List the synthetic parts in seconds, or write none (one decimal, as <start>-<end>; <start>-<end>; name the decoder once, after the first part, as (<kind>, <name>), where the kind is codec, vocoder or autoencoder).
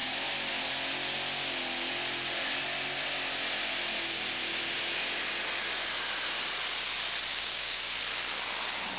7.3-8.0 (codec, DAC)